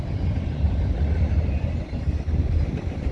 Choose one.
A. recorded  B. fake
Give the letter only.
B